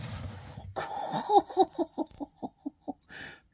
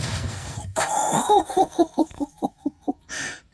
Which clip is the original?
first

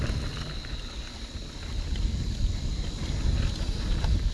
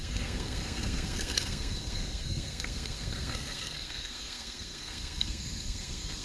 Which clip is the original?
first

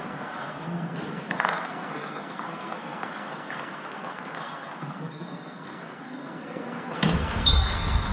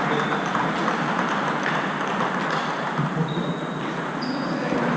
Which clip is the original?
second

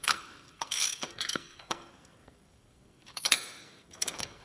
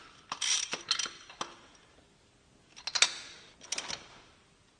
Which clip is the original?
second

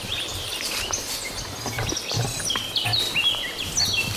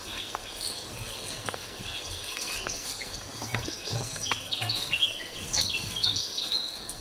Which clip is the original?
first